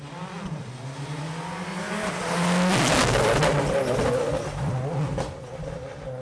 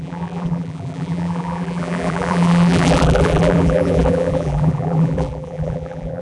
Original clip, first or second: first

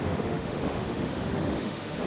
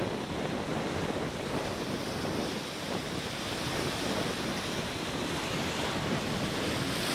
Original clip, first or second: second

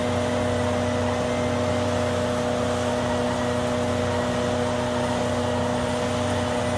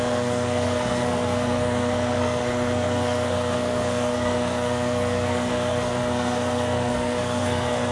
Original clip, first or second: first